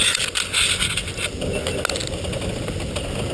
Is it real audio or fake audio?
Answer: real